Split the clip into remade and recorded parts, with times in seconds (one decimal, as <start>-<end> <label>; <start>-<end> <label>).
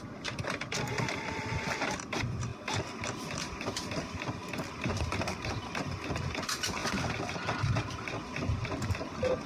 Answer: 0.0-2.5 remade; 2.5-3.1 recorded; 3.1-4.4 remade; 4.4-5.8 recorded; 5.8-6.8 remade; 6.8-8.0 recorded; 8.0-9.5 remade